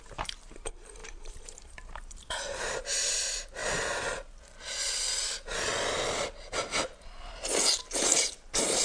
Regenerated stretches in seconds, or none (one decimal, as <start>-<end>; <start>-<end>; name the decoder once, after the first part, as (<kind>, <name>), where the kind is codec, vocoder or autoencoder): 0.0-3.6 (vocoder, BigVGAN v2); 7.8-8.8